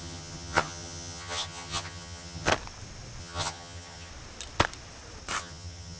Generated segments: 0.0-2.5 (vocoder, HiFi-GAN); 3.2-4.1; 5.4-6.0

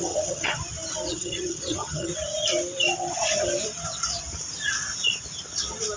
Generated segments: 0.0-0.6 (vocoder, HiFi-GAN); 1.1-2.1

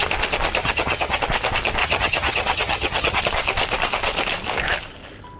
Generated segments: 0.6-1.2 (vocoder, HiFi-GAN); 1.8-3.2

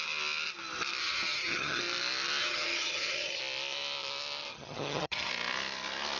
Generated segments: 1.0-1.8 (vocoder, HiFi-GAN); 2.4-3.4; 4.5-5.3